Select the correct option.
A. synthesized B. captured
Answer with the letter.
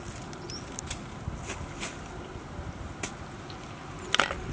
B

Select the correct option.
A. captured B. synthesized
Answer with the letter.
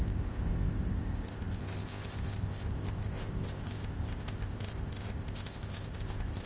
B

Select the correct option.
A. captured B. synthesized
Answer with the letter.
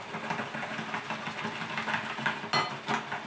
A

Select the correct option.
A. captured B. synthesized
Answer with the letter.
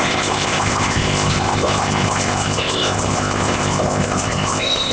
B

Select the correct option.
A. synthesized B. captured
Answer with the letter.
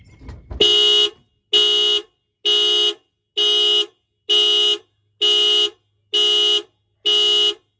B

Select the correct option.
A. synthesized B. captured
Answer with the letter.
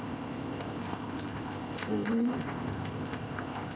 A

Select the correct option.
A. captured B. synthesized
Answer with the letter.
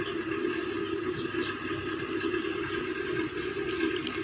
A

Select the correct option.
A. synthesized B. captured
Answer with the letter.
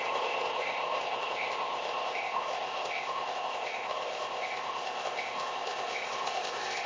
A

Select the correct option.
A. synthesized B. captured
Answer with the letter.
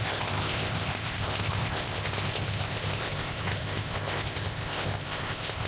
A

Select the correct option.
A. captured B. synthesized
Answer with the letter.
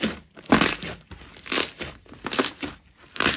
A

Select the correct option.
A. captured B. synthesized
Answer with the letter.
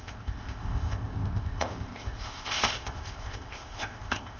B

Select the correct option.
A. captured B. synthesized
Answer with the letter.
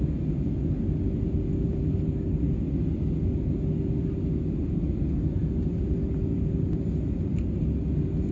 A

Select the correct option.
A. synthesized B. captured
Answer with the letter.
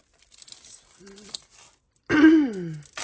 B